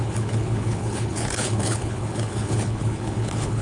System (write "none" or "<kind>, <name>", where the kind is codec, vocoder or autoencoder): codec, HILCodec